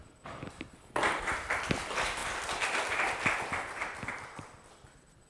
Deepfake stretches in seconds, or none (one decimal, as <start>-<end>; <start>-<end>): none